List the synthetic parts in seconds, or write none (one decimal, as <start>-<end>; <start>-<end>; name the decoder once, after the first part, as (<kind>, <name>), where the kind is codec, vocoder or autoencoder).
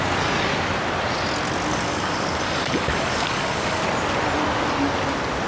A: 1.7-3.8 (codec, DAC)